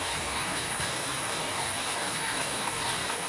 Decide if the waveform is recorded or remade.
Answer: remade